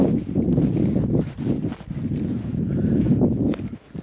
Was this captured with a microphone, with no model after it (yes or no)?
yes